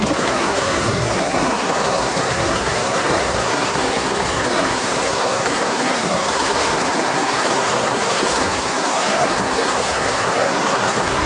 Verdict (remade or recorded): remade